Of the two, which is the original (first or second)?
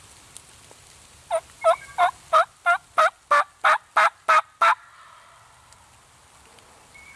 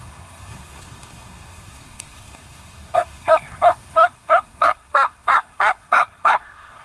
first